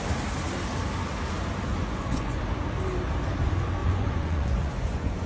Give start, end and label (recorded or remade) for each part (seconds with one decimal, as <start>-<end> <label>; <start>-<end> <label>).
0.0-1.7 recorded; 1.7-2.4 remade; 2.4-3.8 recorded; 3.8-5.3 remade